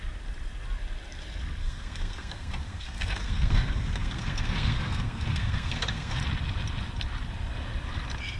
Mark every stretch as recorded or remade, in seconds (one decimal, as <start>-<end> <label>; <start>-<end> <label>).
0.0-1.6 recorded; 1.6-6.2 remade; 6.2-8.4 recorded